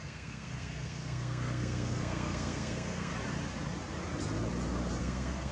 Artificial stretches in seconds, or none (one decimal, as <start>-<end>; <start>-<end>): 0.0-3.1; 5.0-5.5